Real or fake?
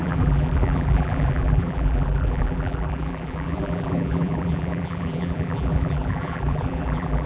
fake